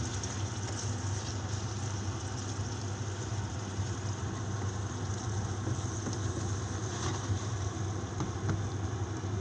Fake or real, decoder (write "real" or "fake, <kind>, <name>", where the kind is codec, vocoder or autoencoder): real